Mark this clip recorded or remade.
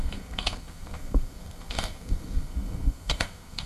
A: remade